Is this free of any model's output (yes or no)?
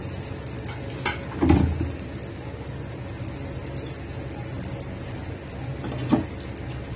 yes